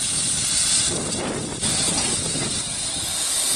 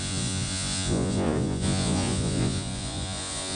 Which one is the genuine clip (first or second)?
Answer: first